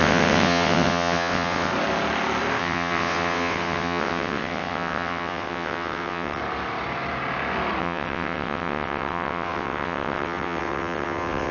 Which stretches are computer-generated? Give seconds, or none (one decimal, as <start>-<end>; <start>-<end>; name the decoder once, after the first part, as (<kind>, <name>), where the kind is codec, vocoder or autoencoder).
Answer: 0.0-1.7 (vocoder, WaveNeXt); 2.6-6.4; 7.8-11.5